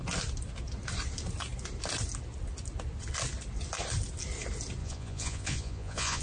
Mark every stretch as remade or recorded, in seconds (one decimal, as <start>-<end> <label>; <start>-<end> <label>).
0.0-4.8 recorded; 4.8-6.2 remade